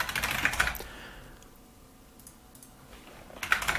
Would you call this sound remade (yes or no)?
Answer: no